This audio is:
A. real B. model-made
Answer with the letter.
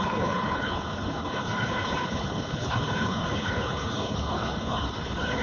B